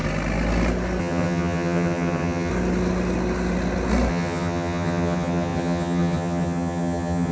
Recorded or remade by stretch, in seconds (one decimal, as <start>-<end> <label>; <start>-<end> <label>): 0.0-1.0 recorded; 1.0-2.5 remade; 2.5-4.1 recorded; 4.1-7.3 remade